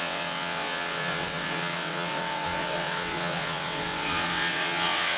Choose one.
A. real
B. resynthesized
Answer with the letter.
B